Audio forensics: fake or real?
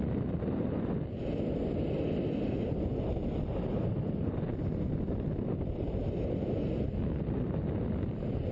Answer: real